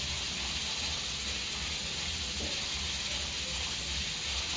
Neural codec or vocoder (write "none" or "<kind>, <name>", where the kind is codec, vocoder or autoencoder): none